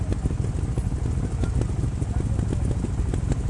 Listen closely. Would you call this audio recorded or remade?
recorded